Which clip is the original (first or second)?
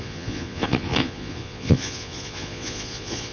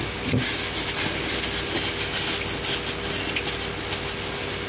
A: second